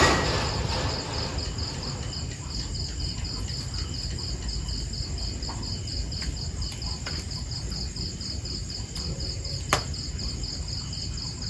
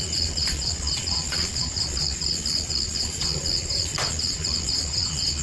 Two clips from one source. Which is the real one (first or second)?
first